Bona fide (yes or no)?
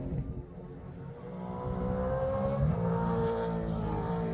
yes